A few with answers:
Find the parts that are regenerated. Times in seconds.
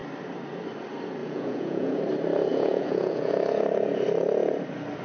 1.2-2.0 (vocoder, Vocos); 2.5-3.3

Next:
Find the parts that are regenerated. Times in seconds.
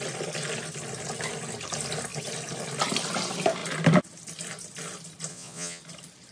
5.3-5.8 (vocoder, Vocos)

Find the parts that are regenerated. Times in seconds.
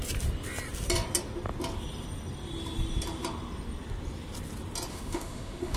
4.9-5.8 (autoencoder, DAC-VAE)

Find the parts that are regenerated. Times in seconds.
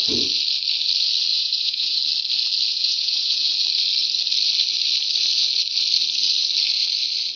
1.3-2.0 (vocoder, Vocos); 2.7-3.5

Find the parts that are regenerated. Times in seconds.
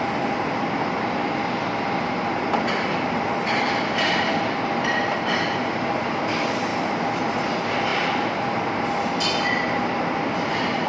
none